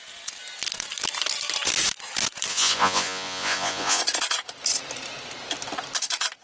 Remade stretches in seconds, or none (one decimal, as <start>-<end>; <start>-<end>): 2.5-4.0